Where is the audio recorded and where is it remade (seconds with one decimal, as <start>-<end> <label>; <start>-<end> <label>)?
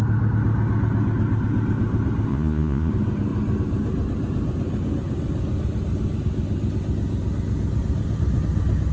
0.0-2.3 recorded; 2.3-2.9 remade; 2.9-8.9 recorded